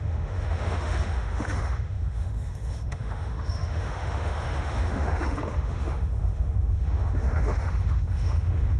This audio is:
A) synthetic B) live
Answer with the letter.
A